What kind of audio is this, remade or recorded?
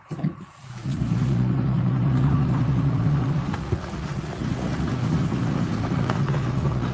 remade